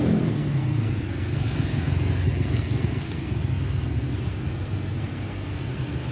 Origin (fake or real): fake